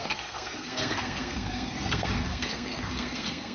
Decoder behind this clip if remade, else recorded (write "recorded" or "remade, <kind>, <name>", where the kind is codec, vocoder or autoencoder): remade, codec, SNAC